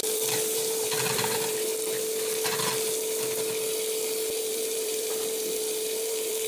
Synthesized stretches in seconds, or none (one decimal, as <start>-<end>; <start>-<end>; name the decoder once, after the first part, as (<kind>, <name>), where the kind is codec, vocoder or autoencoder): 0.0-1.7 (vocoder, BigVGAN v2); 4.4-6.5

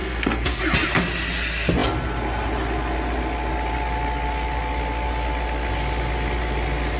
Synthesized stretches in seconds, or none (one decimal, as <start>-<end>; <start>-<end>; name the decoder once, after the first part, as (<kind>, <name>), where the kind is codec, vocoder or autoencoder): 0.0-0.6 (codec, SNAC)

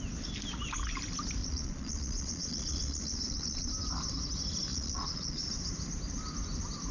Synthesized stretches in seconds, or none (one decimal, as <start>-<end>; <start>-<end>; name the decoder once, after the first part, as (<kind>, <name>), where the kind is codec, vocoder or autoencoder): 1.4-3.7 (vocoder, Vocos); 4.7-5.5

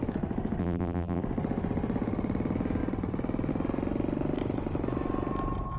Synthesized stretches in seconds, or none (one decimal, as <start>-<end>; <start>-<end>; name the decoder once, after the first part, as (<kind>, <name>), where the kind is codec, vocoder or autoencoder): 0.6-1.2 (vocoder, BigVGAN v2)

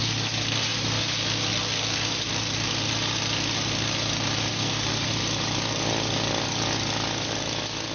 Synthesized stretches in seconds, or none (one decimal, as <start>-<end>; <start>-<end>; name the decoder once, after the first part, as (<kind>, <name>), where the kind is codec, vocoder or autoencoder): 4.5-5.1 (codec, SNAC)